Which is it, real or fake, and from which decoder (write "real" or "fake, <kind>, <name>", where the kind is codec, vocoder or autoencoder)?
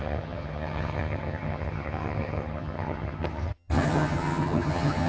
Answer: fake, vocoder, HiFi-GAN